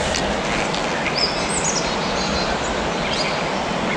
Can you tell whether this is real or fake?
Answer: real